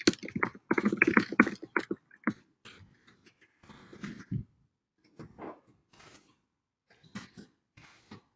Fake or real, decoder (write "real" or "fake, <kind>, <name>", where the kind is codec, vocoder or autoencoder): real